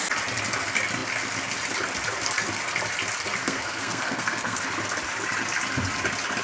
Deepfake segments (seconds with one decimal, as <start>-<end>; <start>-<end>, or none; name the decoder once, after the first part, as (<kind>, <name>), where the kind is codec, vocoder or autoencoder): 3.4-4.6 (codec, SNAC)